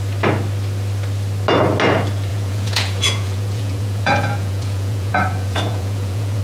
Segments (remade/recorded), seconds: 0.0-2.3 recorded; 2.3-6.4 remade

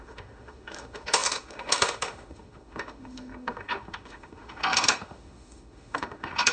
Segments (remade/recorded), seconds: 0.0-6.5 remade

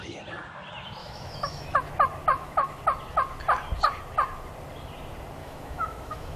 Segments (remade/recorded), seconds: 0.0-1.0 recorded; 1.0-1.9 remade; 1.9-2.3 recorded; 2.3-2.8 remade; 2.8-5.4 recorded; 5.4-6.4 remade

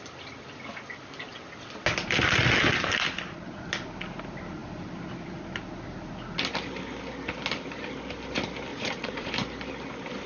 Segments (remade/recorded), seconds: 0.0-8.7 recorded; 8.7-9.3 remade; 9.3-10.3 recorded

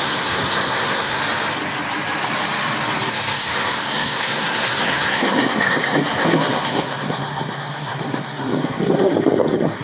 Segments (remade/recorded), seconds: 0.0-1.2 remade; 1.2-3.1 recorded; 3.1-9.8 remade

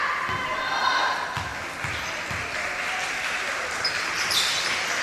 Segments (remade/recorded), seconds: 0.0-5.0 recorded

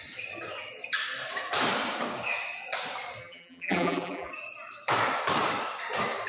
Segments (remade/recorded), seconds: 0.0-3.2 recorded; 3.2-4.3 remade; 4.3-6.3 recorded

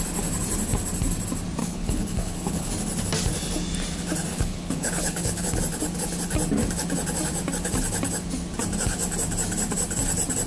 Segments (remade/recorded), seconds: 0.0-1.6 recorded; 1.6-2.7 remade; 2.7-4.3 recorded; 4.3-5.6 remade; 5.6-10.5 recorded